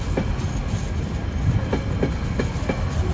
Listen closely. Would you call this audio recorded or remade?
recorded